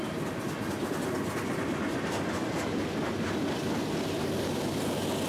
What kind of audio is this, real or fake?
real